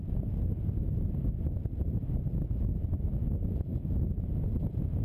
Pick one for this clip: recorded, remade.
recorded